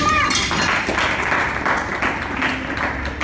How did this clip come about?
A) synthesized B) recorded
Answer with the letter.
B